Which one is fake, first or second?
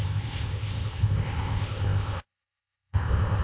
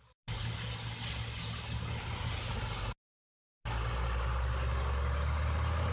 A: first